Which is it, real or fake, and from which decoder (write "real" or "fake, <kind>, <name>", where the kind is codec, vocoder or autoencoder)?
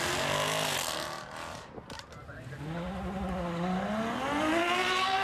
real